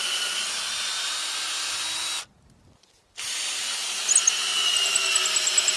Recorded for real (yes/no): yes